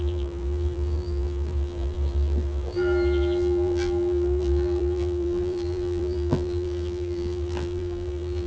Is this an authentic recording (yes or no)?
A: no